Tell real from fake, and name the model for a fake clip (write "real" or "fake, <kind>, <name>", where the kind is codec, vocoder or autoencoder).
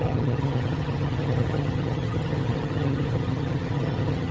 fake, vocoder, HiFi-GAN